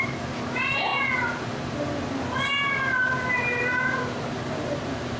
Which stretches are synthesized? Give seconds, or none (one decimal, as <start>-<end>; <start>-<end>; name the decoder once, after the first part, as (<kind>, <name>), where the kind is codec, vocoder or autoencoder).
0.0-0.9 (vocoder, BigVGAN v2); 4.0-5.2